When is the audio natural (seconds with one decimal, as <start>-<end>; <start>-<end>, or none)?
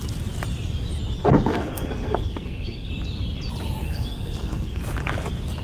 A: 0.0-1.2; 2.9-3.8; 4.8-5.6